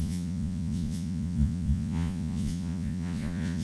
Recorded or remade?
remade